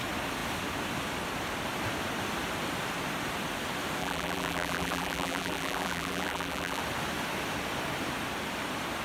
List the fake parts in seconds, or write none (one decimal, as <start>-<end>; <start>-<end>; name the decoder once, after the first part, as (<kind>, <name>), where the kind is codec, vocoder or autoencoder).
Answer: 4.0-6.8 (vocoder, BigVGAN v2)